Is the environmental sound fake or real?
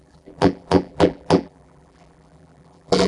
fake